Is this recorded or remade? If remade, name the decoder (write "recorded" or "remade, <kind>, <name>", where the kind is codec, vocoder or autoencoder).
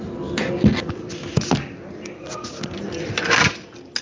recorded